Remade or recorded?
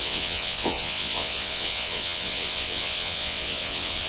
remade